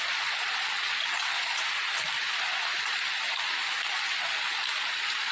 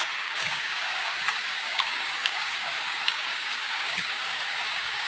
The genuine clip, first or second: first